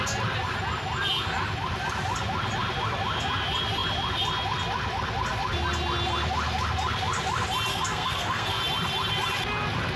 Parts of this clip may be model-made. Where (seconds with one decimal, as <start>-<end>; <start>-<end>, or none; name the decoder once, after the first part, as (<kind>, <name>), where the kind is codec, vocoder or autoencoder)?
7.7-8.6 (codec, SNAC)